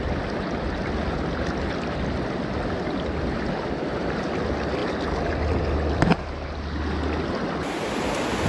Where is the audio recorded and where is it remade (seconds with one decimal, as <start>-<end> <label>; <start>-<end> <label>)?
0.0-8.5 recorded